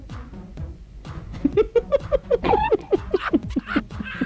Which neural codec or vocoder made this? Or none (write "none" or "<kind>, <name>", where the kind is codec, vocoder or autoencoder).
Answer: vocoder, Vocos